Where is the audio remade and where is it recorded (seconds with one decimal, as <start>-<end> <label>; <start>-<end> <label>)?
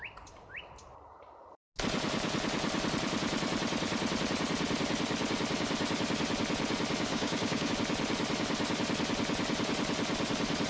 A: 0.0-7.1 recorded; 7.1-7.7 remade; 7.7-10.7 recorded